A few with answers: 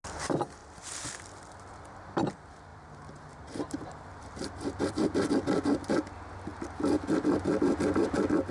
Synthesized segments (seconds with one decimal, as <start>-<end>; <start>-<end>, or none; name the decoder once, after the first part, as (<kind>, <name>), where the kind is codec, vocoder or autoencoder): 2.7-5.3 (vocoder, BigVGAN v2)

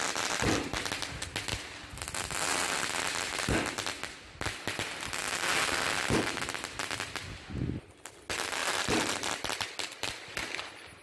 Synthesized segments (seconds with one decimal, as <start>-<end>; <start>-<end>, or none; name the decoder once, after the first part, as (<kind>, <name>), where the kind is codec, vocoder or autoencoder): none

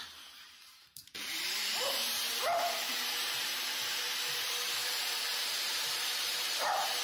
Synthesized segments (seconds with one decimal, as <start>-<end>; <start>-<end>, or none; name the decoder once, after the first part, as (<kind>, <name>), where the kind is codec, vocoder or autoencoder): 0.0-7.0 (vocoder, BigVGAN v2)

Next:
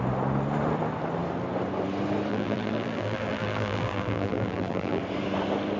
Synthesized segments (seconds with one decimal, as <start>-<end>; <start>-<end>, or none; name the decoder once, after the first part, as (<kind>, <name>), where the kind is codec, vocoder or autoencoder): 2.3-5.0 (vocoder, BigVGAN v2)